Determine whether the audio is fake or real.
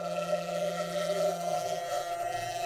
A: fake